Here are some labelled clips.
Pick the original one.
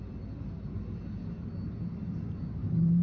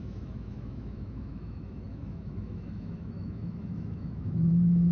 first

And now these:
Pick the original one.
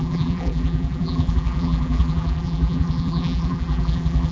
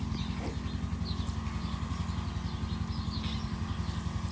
second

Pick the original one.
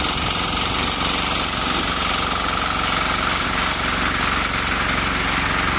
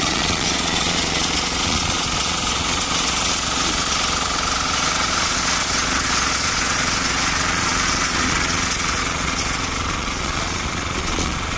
first